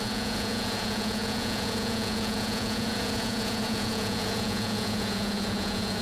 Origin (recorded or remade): remade